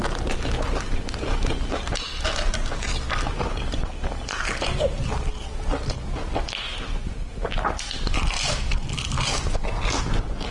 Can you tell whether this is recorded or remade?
recorded